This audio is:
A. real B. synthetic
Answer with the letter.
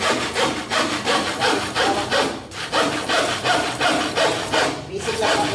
A